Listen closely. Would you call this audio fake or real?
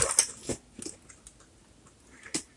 real